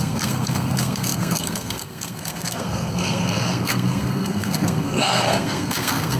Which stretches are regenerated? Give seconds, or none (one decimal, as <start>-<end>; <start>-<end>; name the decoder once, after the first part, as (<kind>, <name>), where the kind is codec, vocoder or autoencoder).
0.0-6.2 (codec, SNAC)